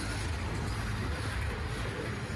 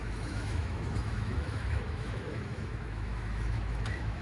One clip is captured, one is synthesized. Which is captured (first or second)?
first